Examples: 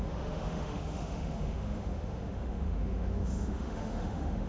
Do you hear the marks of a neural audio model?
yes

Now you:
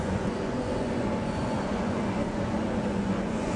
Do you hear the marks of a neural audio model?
yes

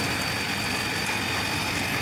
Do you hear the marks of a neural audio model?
no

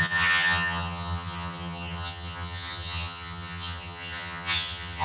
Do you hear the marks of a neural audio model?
yes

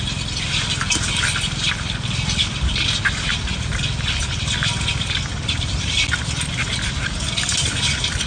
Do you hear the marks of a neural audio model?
no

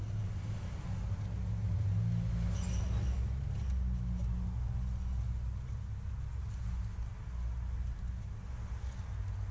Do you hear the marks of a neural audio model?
no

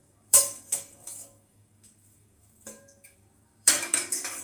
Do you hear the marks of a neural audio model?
yes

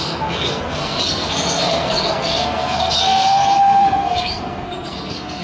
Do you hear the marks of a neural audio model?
yes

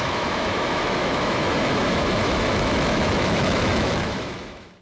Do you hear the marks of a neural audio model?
yes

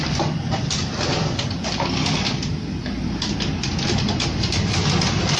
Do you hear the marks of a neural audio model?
yes